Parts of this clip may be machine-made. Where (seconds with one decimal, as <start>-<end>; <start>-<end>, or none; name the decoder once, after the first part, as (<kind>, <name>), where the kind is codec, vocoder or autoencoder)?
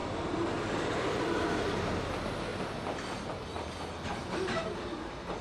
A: none